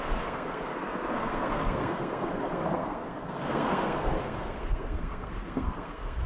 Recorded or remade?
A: remade